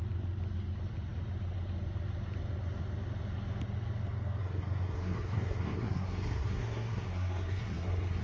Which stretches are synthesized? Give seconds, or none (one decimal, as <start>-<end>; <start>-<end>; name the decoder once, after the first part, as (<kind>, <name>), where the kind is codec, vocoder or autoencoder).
4.4-8.2 (codec, SNAC)

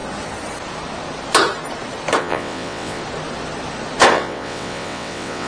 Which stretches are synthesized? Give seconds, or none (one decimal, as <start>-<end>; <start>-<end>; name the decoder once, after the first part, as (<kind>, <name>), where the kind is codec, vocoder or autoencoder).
2.2-3.0 (vocoder, WaveNeXt); 4.1-5.5

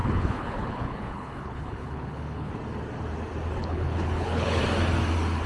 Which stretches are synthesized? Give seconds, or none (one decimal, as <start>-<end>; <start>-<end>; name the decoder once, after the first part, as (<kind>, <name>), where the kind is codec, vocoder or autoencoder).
0.0-2.5 (codec, HILCodec); 3.6-4.6

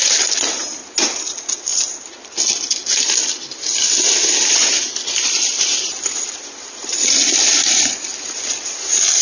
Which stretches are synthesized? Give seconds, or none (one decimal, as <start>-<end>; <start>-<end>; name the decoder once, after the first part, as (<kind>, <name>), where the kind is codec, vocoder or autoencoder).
none

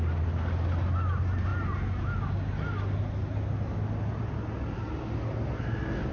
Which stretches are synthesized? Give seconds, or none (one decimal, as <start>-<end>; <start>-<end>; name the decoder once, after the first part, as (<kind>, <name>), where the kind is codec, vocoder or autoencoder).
none

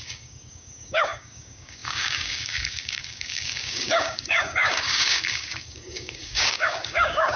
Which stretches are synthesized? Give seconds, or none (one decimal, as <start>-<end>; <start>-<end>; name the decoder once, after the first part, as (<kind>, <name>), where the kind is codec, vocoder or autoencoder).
0.0-7.4 (codec, DAC)

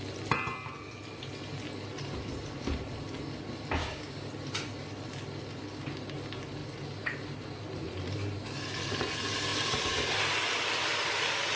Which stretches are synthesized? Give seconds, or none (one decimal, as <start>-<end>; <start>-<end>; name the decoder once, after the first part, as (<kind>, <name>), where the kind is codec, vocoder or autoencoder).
3.8-4.3 (codec, DAC)